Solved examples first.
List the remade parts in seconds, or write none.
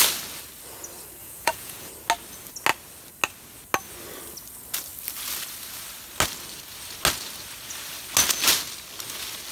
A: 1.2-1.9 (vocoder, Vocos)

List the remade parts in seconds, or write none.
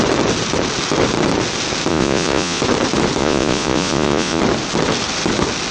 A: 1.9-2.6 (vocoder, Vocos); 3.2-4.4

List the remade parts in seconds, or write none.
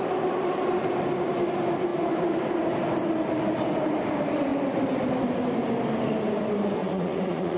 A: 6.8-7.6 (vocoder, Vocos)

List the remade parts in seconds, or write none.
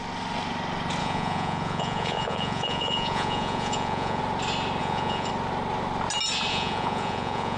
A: 1.0-4.2 (vocoder, Vocos); 4.8-5.3; 6.5-7.6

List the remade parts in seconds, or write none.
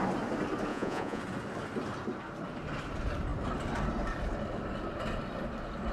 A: 0.7-1.2 (vocoder, Vocos)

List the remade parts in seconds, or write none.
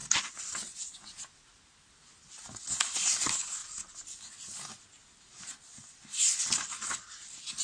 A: 0.0-1.2 (vocoder, Vocos)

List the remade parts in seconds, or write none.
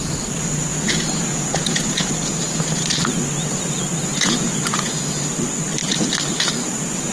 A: 0.7-2.1 (vocoder, Vocos); 4.1-5.0